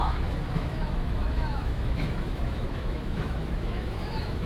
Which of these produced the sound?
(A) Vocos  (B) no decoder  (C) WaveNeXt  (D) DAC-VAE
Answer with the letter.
D